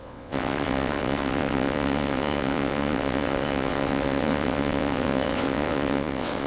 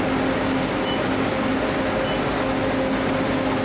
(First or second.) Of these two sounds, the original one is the second